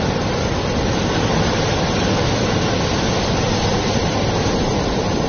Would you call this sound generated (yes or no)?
no